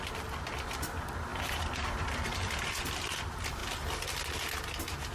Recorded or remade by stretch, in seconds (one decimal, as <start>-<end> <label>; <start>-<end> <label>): 0.0-5.1 recorded